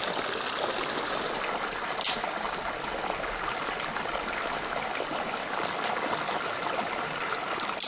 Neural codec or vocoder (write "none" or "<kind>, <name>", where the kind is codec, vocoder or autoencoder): none